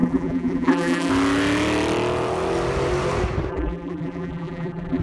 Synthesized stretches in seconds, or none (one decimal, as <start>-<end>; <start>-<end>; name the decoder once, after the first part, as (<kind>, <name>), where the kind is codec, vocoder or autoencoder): 0.0-1.1 (vocoder, BigVGAN v2); 3.5-5.0